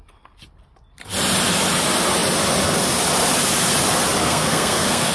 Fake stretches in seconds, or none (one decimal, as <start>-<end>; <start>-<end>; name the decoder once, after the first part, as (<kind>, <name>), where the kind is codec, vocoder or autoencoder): 4.2-5.1 (codec, SNAC)